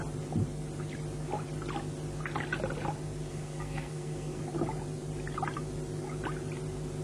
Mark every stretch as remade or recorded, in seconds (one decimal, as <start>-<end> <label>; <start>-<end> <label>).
0.0-3.3 recorded; 3.3-4.4 remade; 4.4-7.0 recorded